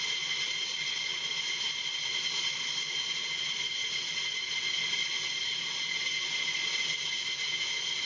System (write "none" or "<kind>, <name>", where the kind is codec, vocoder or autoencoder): none